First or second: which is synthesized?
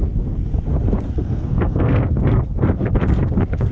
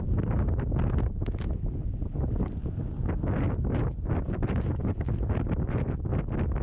first